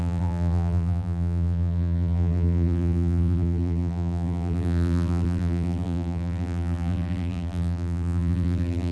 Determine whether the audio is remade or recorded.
remade